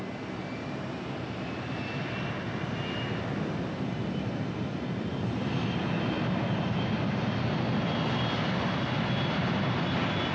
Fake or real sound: real